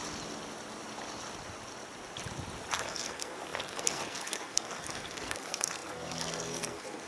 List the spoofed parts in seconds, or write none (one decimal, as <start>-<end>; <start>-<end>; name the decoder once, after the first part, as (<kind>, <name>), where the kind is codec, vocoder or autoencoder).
2.7-7.1 (codec, SNAC)